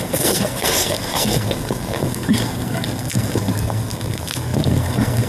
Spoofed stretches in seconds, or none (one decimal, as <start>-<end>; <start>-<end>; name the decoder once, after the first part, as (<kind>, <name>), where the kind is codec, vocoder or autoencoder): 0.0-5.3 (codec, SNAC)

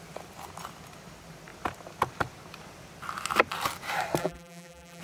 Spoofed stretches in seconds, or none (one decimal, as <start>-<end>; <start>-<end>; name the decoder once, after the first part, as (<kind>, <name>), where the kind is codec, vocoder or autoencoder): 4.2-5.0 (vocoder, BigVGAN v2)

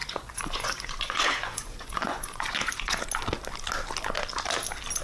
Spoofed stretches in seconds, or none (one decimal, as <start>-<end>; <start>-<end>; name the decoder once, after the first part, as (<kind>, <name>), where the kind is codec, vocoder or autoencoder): 0.0-3.0 (vocoder, Vocos)

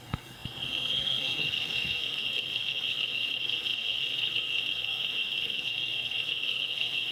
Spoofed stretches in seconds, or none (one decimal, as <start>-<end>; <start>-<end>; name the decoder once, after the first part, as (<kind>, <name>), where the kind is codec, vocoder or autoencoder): 0.0-7.1 (codec, SNAC)

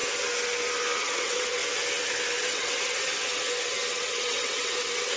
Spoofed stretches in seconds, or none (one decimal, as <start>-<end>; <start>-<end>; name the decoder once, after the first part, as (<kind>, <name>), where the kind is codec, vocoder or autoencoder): 1.0-1.6 (vocoder, WaveNeXt); 2.4-3.1; 3.9-5.2